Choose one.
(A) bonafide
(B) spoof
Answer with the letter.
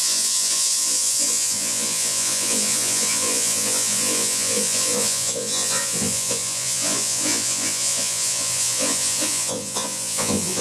B